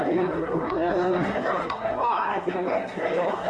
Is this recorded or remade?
remade